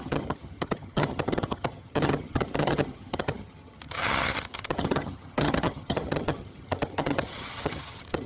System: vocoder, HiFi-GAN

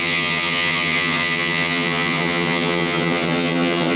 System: vocoder, HiFi-GAN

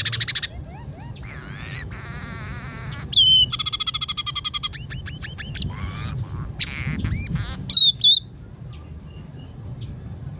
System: none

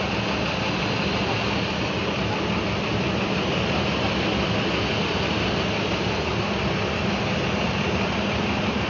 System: none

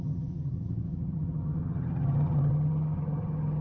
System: vocoder, HiFi-GAN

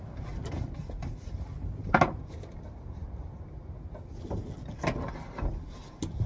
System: none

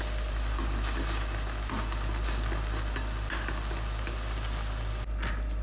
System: none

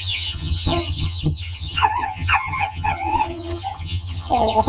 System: vocoder, HiFi-GAN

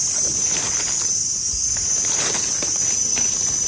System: none